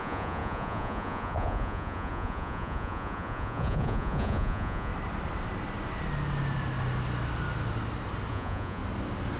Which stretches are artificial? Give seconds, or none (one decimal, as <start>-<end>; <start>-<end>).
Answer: 0.0-4.9; 8.3-8.8